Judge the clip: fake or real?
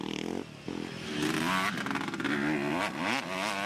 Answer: real